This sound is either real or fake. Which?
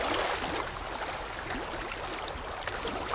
real